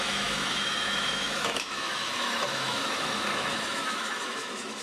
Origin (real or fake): fake